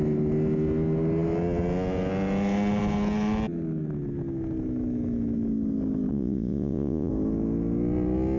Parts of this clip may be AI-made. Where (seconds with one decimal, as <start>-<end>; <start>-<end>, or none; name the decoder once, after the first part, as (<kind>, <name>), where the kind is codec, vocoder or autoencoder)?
6.1-7.1 (vocoder, Vocos)